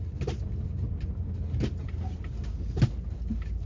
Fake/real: real